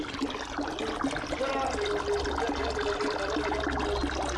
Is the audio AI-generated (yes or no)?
no